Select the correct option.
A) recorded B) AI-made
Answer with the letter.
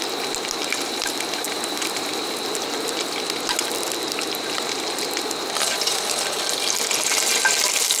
A